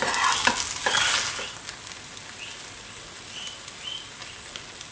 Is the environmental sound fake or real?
real